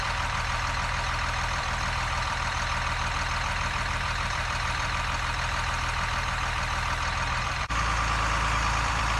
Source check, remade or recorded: remade